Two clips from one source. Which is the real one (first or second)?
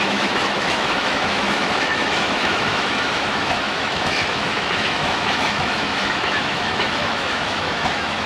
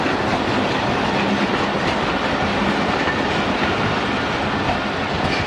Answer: second